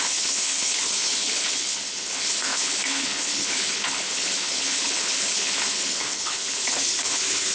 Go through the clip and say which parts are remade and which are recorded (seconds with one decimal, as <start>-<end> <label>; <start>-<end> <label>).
0.0-7.5 remade